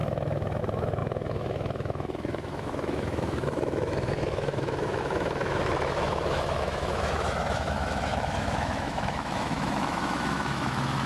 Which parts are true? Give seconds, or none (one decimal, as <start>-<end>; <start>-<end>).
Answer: none